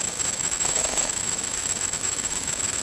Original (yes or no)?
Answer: no